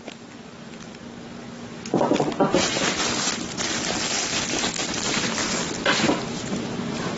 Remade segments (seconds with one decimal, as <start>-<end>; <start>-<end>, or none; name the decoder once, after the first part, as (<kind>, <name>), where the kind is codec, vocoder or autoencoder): none